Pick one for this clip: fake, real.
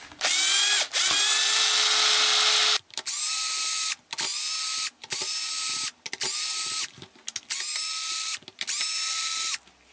real